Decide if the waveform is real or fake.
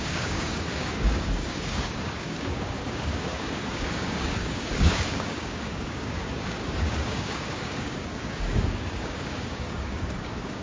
fake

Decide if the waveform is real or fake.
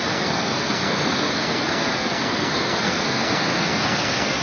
fake